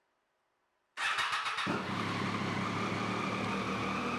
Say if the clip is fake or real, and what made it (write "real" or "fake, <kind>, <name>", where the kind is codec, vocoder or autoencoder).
real